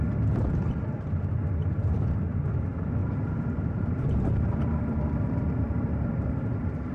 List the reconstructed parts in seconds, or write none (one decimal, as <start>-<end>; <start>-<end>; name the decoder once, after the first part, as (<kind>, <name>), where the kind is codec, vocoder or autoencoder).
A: 3.0-6.1 (vocoder, BigVGAN v2)